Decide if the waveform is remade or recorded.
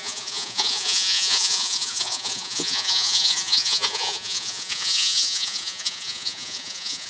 remade